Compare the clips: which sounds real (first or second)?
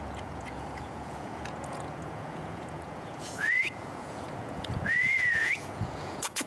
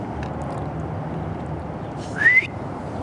second